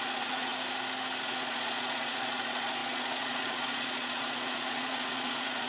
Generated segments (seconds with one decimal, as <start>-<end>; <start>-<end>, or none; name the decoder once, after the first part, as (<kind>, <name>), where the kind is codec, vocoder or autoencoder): 0.0-0.5 (vocoder, Vocos); 1.2-5.7